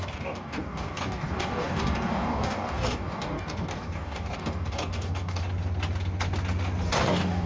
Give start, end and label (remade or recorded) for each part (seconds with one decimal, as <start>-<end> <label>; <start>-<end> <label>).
0.0-5.4 remade; 5.4-7.0 recorded; 7.0-7.5 remade